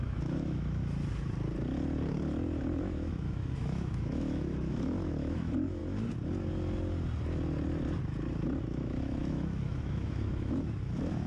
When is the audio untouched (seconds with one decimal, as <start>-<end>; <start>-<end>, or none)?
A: 0.8-2.8; 5.8-8.6